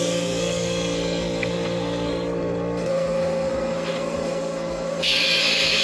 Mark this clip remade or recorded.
remade